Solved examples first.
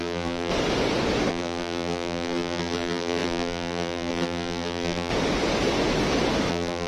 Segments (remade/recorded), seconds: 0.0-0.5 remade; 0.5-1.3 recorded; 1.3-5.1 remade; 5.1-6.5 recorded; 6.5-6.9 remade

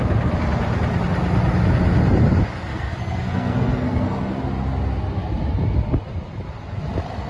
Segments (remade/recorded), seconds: 0.0-2.7 recorded; 2.7-4.4 remade; 4.4-7.3 recorded

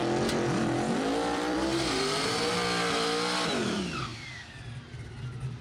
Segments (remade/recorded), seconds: 0.0-2.5 remade; 2.5-4.1 recorded; 4.1-4.6 remade; 4.6-5.6 recorded

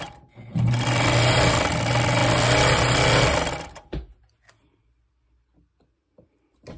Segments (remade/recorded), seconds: 0.0-6.8 recorded

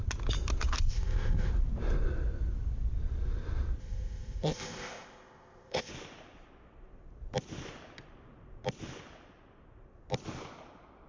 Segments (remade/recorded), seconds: 0.0-0.9 recorded; 0.9-1.5 remade; 1.5-3.8 recorded; 3.8-5.9 remade; 5.9-11.1 recorded

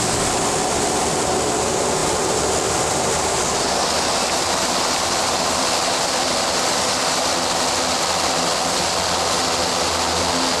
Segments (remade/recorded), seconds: 0.0-10.6 recorded

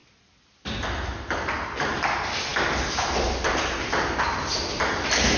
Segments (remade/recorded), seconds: 0.0-5.4 recorded